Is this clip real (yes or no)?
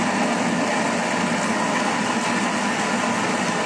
yes